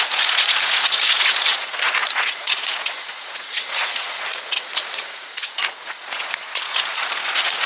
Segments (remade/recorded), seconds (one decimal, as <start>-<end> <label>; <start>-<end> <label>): 0.0-7.7 remade